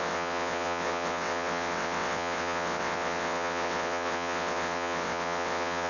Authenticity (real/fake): fake